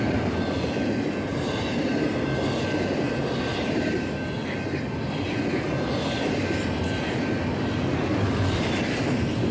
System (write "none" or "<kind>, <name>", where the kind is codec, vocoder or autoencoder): none